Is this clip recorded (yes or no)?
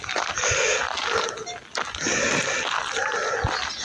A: yes